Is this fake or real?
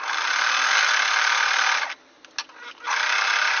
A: real